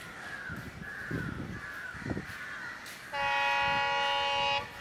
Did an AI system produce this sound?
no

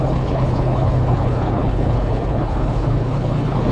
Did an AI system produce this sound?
yes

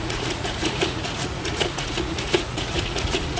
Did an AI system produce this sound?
yes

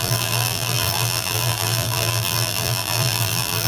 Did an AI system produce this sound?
yes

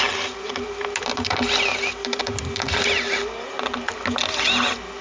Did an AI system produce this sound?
no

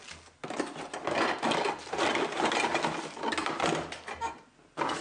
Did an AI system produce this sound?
no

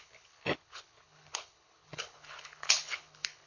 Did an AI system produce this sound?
yes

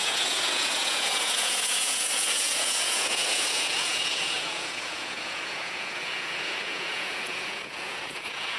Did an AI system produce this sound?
yes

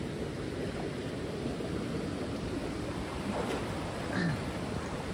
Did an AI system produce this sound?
yes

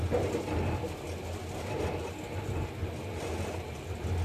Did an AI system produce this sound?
no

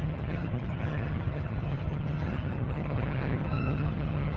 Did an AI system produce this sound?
yes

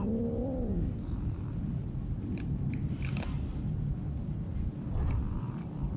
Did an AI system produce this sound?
no